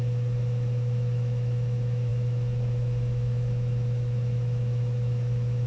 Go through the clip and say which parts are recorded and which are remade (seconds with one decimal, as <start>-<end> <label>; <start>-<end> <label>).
0.0-5.7 remade